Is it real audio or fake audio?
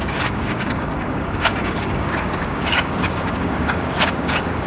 fake